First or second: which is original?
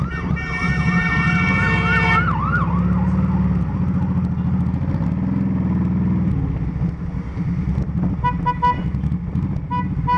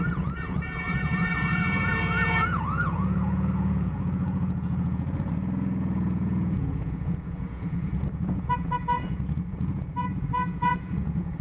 first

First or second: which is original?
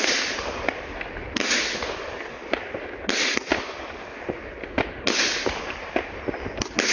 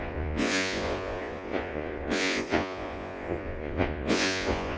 first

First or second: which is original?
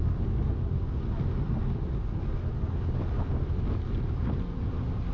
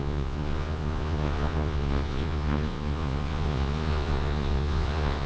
first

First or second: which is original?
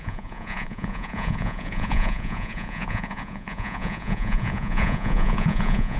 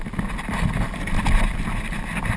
second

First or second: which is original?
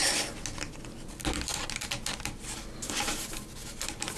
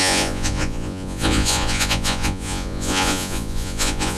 first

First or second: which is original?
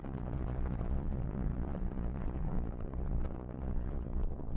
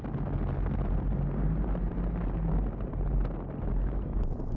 second